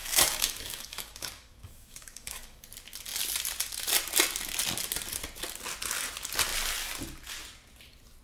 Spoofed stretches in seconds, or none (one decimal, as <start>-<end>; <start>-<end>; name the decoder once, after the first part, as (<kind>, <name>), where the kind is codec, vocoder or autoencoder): 0.0-2.6 (codec, DAC)